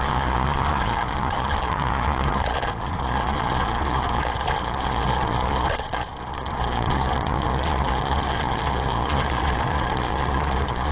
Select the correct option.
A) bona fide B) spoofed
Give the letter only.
B